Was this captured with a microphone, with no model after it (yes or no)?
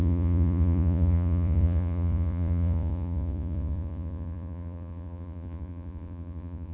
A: no